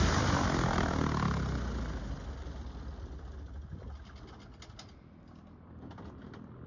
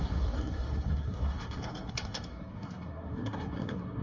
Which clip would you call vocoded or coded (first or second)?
second